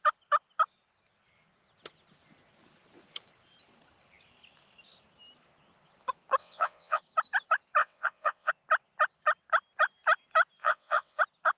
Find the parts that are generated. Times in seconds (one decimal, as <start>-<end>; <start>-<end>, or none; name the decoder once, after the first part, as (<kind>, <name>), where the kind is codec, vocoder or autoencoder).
6.4-7.0 (vocoder, WaveNeXt); 7.8-8.5; 10.6-11.2